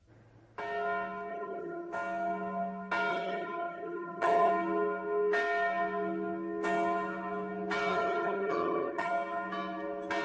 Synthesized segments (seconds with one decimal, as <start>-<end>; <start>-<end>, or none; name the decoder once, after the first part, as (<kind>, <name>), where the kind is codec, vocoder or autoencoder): 1.3-1.9 (vocoder, HiFi-GAN); 3.1-4.5; 7.9-9.1